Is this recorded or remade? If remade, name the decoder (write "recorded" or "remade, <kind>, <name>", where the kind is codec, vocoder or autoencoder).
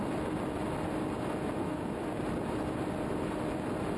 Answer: recorded